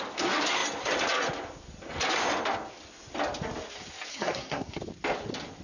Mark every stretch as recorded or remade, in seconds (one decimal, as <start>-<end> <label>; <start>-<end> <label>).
0.0-4.1 recorded; 4.1-4.8 remade; 4.8-5.6 recorded